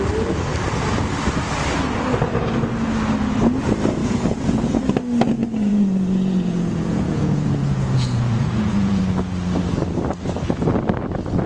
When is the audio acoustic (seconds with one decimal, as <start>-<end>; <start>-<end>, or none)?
0.0-4.0; 4.8-5.4; 9.0-11.5